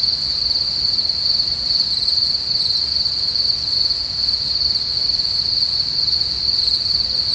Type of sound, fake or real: real